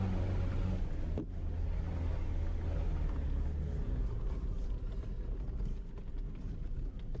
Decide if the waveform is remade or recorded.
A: recorded